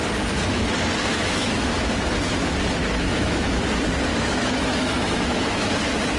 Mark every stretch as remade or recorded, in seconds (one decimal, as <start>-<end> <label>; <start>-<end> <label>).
0.0-1.1 recorded; 1.1-2.1 remade; 2.1-2.8 recorded; 2.8-3.6 remade; 3.6-4.1 recorded; 4.1-5.7 remade; 5.7-6.2 recorded